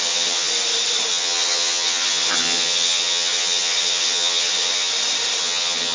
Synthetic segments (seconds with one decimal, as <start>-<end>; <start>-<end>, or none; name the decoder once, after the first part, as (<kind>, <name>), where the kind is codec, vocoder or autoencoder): 0.0-0.5 (vocoder, HiFi-GAN); 1.1-4.9; 5.4-5.9